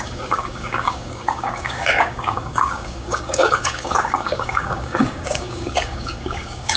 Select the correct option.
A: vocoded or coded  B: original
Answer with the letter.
A